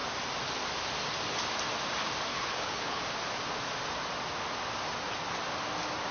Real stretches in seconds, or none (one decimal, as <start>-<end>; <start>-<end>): 0.0-2.3; 3.0-6.1